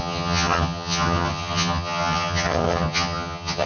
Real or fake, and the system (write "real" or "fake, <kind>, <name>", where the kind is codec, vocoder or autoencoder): fake, vocoder, HiFi-GAN